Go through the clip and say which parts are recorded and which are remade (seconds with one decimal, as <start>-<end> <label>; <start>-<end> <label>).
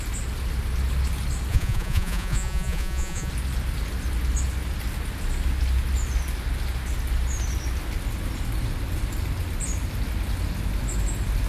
0.0-1.5 recorded; 1.5-3.3 remade; 3.3-11.5 recorded